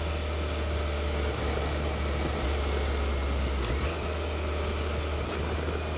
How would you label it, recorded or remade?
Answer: recorded